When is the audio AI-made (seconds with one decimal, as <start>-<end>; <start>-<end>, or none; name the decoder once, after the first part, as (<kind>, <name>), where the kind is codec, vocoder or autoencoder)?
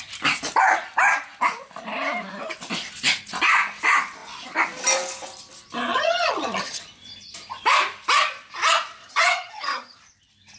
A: 5.9-6.8 (vocoder, HiFi-GAN); 9.0-10.0